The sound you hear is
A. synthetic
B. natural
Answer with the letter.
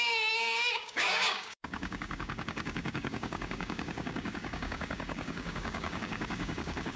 A